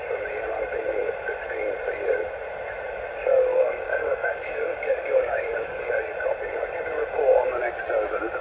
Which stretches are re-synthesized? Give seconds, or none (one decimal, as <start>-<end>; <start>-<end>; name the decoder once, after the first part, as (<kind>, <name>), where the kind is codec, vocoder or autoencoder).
3.5-5.9 (codec, DAC)